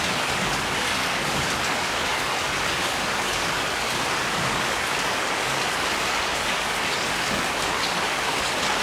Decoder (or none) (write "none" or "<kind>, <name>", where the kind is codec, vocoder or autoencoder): codec, DAC